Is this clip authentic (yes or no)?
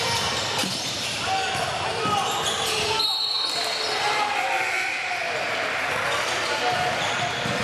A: yes